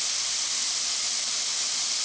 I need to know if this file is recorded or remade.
recorded